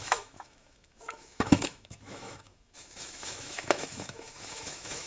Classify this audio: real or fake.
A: fake